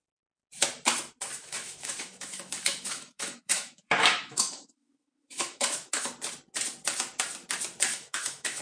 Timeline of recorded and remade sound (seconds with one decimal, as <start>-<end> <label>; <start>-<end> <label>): 0.0-1.4 recorded; 1.4-6.1 remade; 6.1-7.9 recorded; 7.9-8.6 remade